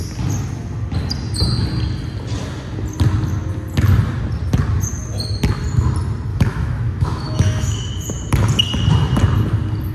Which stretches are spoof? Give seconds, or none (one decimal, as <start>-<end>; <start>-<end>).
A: 6.3-7.9